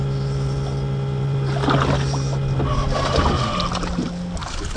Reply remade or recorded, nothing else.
recorded